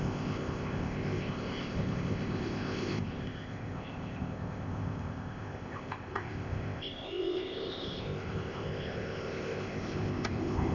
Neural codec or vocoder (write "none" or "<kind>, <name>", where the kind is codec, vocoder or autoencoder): codec, ZipCodec